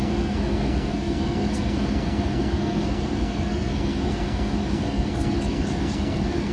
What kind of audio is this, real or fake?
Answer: fake